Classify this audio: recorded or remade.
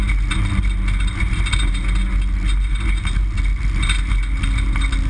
recorded